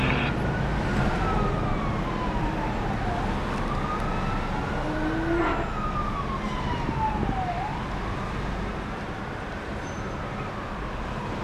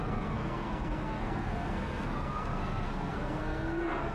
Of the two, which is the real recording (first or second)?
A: first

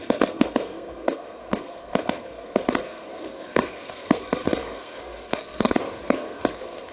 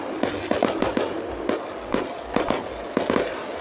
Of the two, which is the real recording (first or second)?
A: second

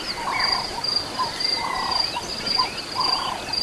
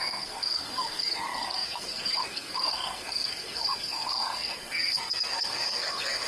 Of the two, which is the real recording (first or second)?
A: first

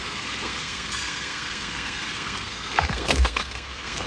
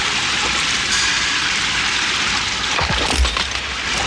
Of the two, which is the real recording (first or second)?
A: second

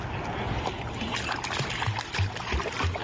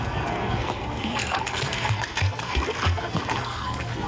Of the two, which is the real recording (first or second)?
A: first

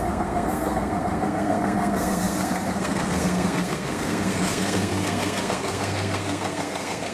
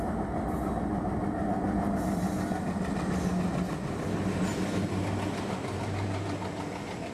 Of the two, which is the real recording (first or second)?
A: second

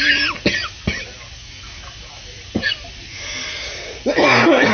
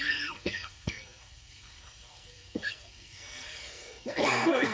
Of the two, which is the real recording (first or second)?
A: first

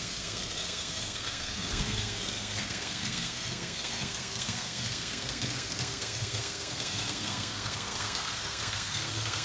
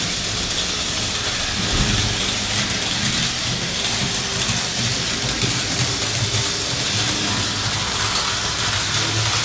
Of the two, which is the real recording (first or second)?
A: second